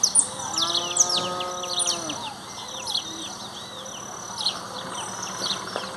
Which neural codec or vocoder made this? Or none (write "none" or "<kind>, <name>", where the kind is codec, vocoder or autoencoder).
none